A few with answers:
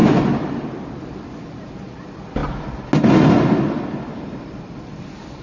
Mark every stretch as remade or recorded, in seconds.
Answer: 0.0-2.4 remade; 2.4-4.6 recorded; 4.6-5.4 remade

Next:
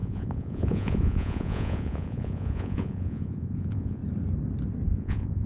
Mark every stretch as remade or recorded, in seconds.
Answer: 0.0-4.0 remade; 4.0-4.9 recorded; 4.9-5.5 remade

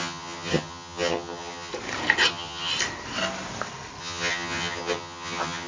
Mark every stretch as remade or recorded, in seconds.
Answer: 0.0-1.7 remade; 1.7-2.3 recorded; 2.3-2.7 remade; 2.7-4.0 recorded; 4.0-5.7 remade